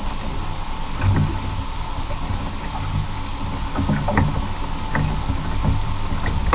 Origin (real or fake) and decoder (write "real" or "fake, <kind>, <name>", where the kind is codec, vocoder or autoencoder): real